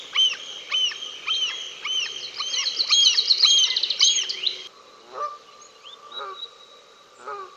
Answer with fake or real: real